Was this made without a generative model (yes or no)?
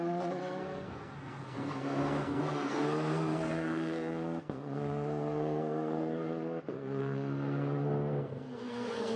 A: no